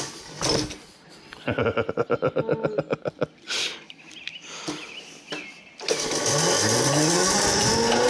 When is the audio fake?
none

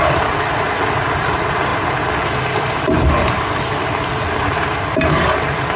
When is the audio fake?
none